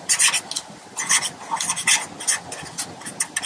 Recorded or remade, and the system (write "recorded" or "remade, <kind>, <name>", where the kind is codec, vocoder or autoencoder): recorded